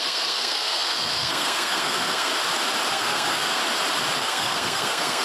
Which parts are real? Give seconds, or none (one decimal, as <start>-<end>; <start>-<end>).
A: 2.3-2.9; 3.6-4.2